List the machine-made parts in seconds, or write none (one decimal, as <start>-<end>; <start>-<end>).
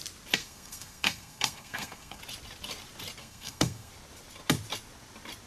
0.4-2.2; 3.2-3.9